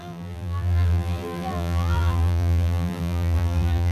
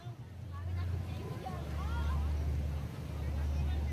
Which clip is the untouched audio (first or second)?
second